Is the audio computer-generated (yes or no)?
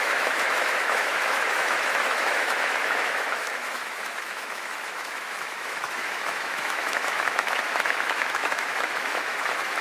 yes